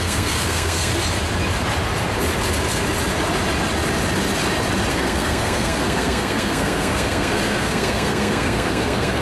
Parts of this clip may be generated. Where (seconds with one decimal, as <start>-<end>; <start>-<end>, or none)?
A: 0.0-0.9; 4.9-9.2